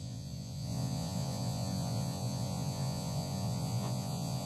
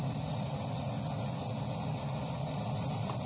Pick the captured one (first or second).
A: second